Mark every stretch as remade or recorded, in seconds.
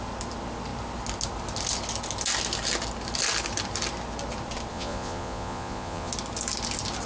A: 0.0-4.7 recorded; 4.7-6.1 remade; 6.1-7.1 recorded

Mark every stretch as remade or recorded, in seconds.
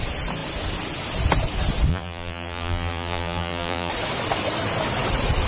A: 0.0-1.9 recorded; 1.9-3.9 remade; 3.9-5.5 recorded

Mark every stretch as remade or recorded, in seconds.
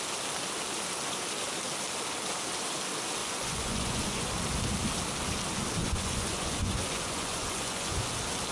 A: 0.0-3.2 recorded; 3.2-4.3 remade; 4.3-5.8 recorded; 5.8-8.1 remade; 8.1-8.5 recorded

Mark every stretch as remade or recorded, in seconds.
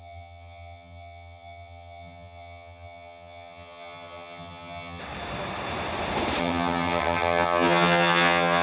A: 0.0-5.0 remade; 5.0-6.4 recorded; 6.4-8.6 remade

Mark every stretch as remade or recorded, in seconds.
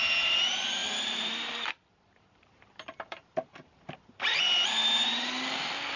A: 0.0-0.8 recorded; 0.8-4.4 remade; 4.4-6.0 recorded